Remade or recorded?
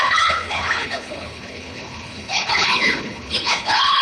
remade